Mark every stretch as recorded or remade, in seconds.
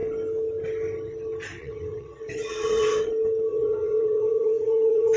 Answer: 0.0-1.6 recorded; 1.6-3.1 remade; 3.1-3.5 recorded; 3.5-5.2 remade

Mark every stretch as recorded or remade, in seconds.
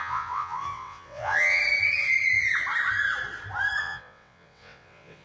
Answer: 0.0-1.6 remade; 1.6-3.8 recorded; 3.8-5.2 remade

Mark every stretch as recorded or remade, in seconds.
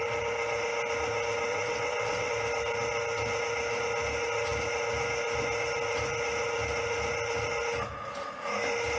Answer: 0.0-1.5 recorded; 1.5-2.3 remade; 2.3-9.0 recorded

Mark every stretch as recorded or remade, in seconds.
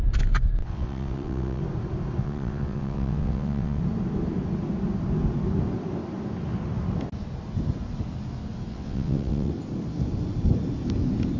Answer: 0.0-0.6 recorded; 0.6-1.6 remade; 1.6-2.2 recorded; 2.2-3.8 remade; 3.8-8.7 recorded; 8.7-9.5 remade; 9.5-11.4 recorded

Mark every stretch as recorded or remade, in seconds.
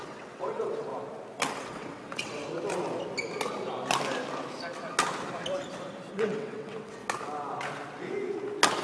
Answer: 0.0-0.9 remade; 0.9-1.6 recorded; 1.6-2.4 remade; 2.4-6.1 recorded; 6.1-7.0 remade; 7.0-8.8 recorded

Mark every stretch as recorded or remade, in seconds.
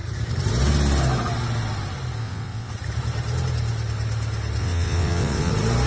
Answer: 0.0-2.2 recorded; 2.2-2.7 remade; 2.7-4.6 recorded; 4.6-5.5 remade; 5.5-5.9 recorded